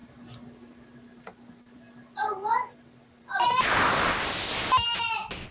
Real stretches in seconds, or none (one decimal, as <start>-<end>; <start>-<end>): 0.0-5.5